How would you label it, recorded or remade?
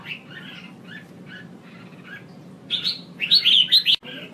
recorded